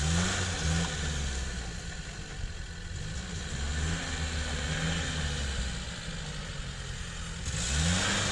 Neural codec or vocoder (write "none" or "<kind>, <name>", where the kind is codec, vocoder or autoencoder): none